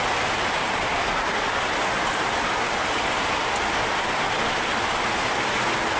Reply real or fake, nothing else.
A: real